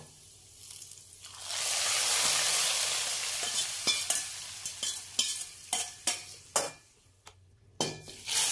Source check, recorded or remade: recorded